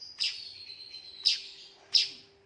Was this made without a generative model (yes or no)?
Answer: yes